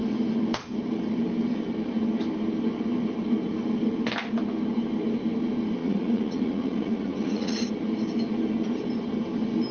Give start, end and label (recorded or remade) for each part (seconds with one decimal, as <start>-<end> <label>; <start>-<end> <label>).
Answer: 0.0-5.8 recorded; 5.8-7.7 remade; 7.7-9.7 recorded